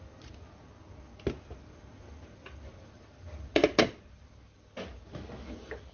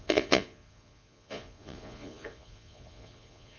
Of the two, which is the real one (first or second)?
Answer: first